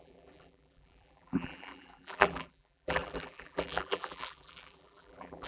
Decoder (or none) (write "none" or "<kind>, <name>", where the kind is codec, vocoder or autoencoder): vocoder, BigVGAN v2